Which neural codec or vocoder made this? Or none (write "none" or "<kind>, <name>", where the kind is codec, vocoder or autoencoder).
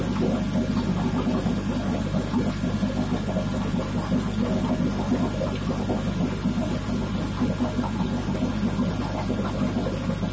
none